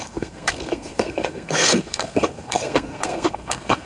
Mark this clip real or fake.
fake